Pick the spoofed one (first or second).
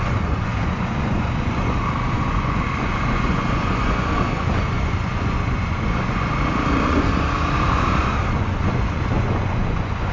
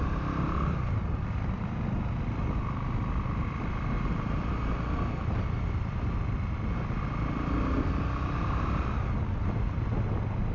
first